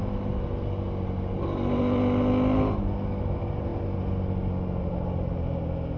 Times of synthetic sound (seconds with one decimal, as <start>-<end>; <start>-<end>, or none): none